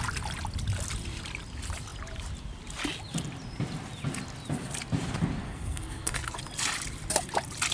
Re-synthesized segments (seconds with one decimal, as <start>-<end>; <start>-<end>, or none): 5.4-6.4